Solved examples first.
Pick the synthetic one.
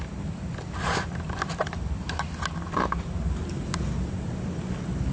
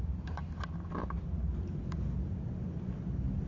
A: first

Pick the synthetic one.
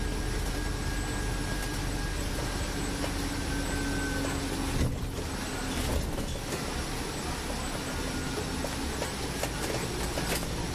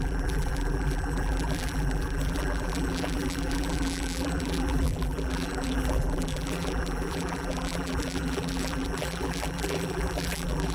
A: second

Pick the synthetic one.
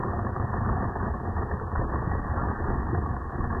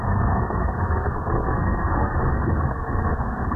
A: second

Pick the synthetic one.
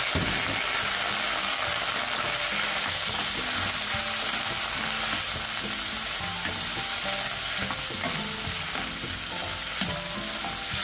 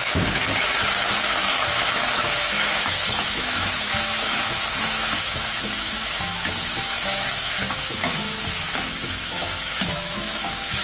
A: second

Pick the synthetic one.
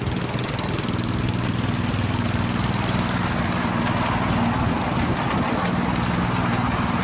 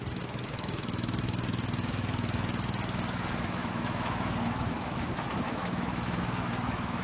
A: second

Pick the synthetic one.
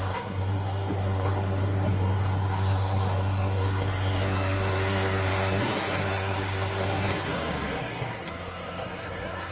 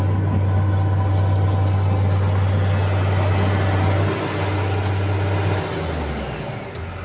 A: first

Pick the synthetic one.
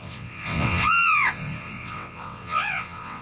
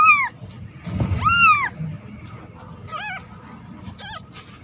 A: first